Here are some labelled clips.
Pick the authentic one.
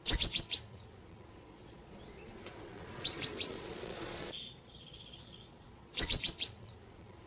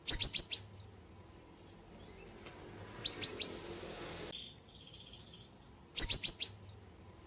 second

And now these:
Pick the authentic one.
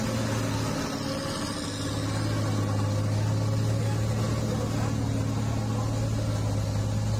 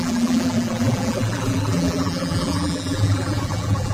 first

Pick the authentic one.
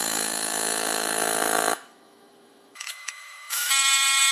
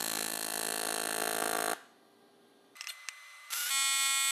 second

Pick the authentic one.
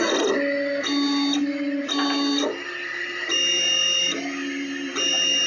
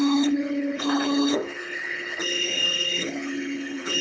first